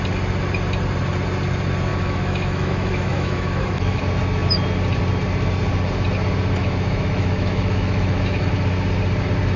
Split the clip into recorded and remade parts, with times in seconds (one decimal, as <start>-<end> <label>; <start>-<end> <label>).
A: 0.0-1.9 recorded; 1.9-4.0 remade; 4.0-6.6 recorded; 6.6-8.5 remade; 8.5-9.6 recorded